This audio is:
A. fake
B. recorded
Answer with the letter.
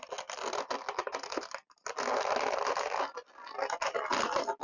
B